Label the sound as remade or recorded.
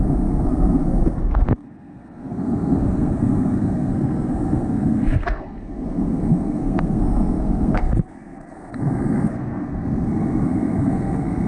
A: remade